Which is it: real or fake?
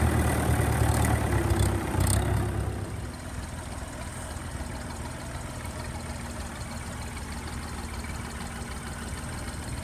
real